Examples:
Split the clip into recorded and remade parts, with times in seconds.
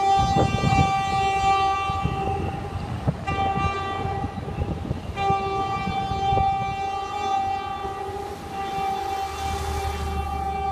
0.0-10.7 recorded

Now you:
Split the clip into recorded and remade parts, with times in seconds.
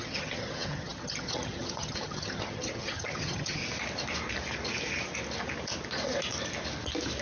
0.0-3.6 remade; 3.6-7.2 recorded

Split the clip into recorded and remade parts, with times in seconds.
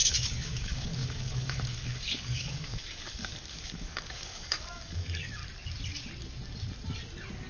0.0-5.4 remade; 5.4-7.5 recorded